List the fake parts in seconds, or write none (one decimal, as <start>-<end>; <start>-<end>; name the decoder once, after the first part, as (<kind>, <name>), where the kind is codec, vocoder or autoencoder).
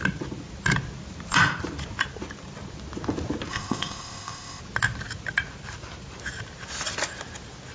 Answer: 3.5-4.6 (codec, ZipCodec)